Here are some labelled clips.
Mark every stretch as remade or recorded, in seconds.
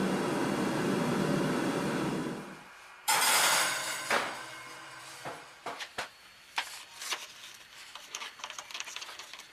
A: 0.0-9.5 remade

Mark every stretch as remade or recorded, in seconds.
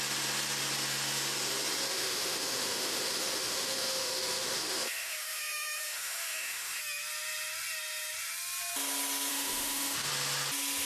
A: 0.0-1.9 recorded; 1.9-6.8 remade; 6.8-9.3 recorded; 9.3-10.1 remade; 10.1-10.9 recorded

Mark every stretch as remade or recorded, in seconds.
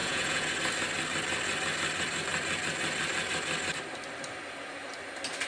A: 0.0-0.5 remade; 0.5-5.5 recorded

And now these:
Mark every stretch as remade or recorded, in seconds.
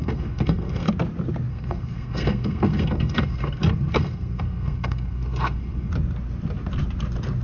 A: 0.0-0.9 remade; 0.9-1.5 recorded; 1.5-5.9 remade; 5.9-7.4 recorded